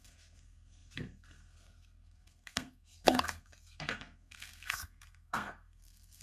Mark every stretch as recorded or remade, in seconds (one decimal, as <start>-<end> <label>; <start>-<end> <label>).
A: 0.0-6.2 remade